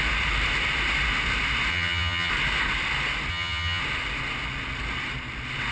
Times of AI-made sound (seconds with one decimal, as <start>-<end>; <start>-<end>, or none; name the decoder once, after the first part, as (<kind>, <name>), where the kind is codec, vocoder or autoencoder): 1.7-2.3 (vocoder, HiFi-GAN); 3.3-3.8